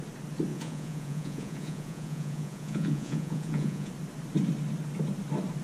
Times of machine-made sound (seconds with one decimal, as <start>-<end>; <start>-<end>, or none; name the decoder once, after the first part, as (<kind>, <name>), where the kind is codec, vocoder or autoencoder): 0.5-3.9 (vocoder, Vocos)